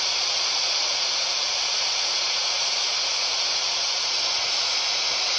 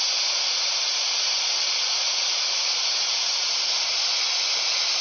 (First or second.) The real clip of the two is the second